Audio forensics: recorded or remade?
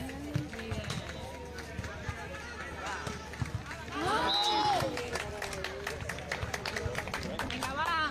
recorded